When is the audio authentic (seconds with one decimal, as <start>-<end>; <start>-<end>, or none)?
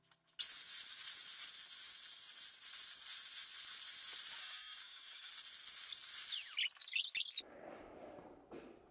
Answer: 0.0-4.4; 5.3-8.9